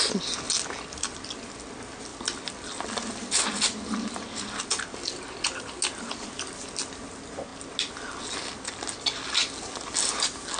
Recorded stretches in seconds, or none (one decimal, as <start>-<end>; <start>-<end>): 0.0-10.6